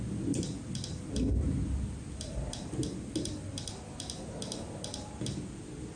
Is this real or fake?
real